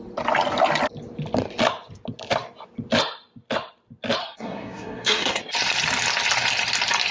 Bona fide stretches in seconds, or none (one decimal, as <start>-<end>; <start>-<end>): 0.0-4.2; 5.4-7.1